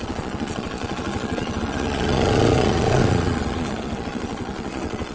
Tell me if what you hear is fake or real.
fake